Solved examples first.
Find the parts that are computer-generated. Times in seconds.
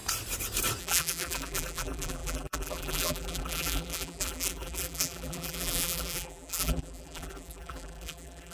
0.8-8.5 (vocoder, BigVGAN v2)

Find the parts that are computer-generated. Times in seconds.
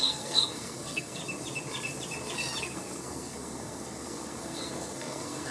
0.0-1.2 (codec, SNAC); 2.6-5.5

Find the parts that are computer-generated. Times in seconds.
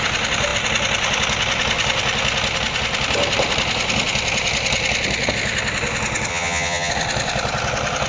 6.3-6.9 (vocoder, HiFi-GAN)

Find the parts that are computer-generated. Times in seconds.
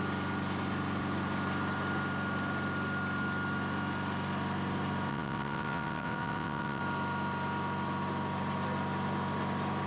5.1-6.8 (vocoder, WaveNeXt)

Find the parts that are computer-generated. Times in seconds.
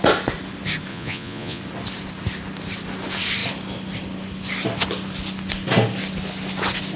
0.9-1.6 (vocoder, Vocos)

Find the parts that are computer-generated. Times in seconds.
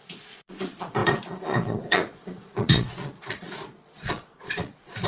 0.0-5.1 (vocoder, Vocos)